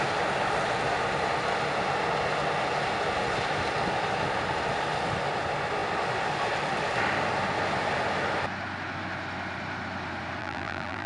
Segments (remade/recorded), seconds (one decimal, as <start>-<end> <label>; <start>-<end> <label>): 0.0-10.4 recorded; 10.4-11.1 remade